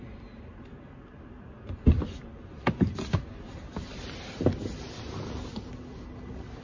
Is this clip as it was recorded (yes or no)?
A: yes